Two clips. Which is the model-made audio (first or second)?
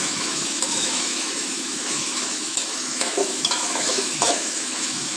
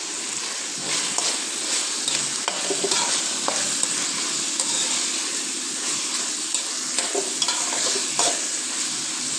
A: first